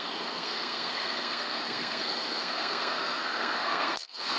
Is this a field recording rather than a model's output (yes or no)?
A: no